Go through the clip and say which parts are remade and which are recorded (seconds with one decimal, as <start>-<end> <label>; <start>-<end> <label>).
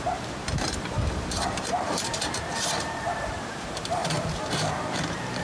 0.0-5.4 remade